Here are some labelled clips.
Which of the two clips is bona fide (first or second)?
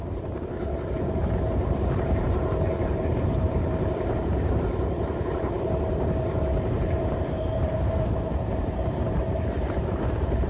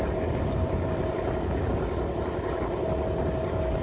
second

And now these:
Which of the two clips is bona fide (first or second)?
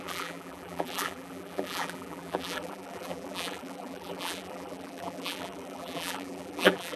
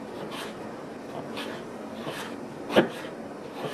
second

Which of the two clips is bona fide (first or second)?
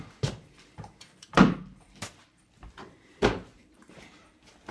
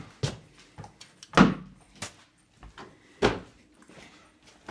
second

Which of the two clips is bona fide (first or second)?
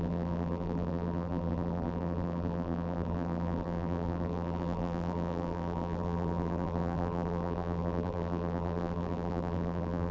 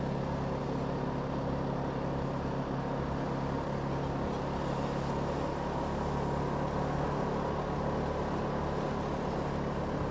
second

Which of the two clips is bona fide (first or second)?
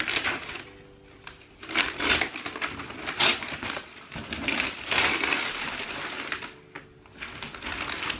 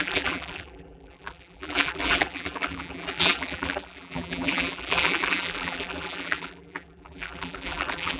first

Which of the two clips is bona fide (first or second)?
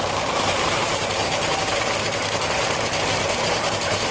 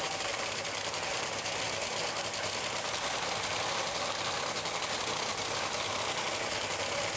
second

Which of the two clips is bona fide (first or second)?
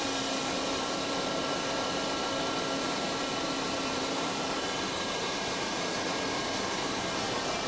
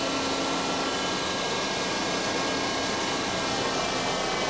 second